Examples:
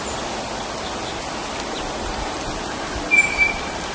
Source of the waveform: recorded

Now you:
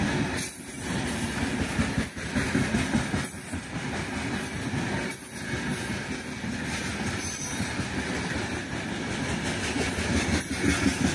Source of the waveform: recorded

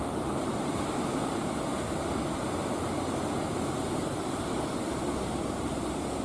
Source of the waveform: remade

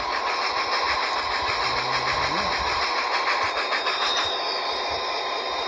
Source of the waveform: recorded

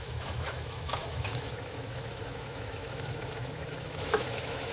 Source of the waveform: remade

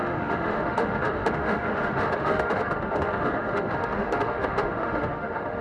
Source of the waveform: remade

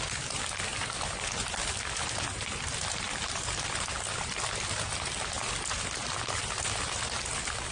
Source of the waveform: recorded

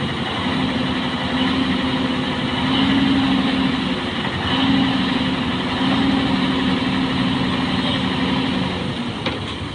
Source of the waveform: recorded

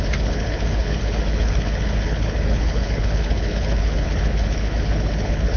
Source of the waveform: remade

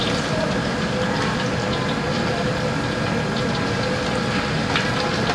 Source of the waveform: recorded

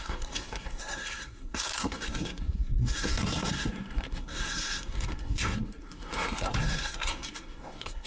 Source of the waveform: remade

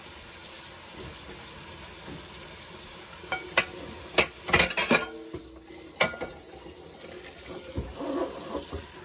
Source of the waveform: recorded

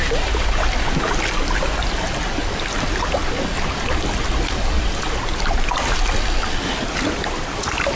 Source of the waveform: recorded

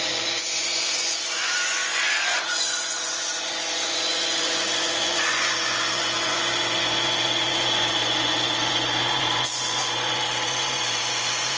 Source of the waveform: remade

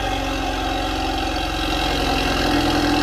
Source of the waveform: recorded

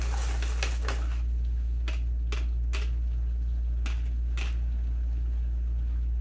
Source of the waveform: recorded